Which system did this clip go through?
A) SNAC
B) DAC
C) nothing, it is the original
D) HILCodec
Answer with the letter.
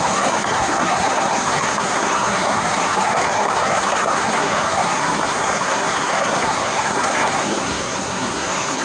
A